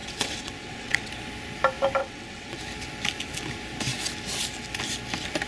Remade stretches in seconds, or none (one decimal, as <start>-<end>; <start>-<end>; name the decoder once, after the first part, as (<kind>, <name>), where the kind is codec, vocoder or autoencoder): 0.0-1.1 (vocoder, WaveNeXt); 2.0-2.6